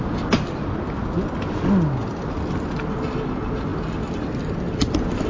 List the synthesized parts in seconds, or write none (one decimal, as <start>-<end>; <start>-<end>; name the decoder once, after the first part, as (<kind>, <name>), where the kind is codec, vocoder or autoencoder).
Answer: 2.0-2.8 (vocoder, BigVGAN v2); 3.7-4.4